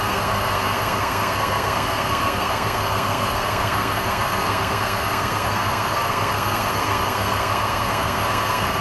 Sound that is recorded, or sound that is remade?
remade